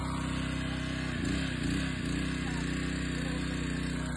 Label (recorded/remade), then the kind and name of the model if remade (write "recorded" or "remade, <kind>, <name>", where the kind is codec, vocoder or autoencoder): recorded